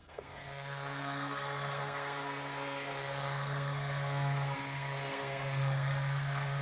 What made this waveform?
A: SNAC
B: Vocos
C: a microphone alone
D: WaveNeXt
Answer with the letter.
A